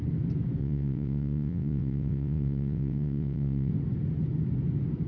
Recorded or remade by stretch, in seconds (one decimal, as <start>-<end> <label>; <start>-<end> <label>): 0.0-0.6 recorded; 0.6-3.7 remade; 3.7-5.1 recorded